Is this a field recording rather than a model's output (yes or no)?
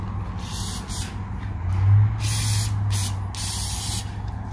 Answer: yes